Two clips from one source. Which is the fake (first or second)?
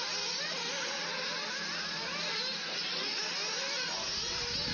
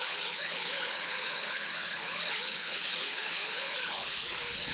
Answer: second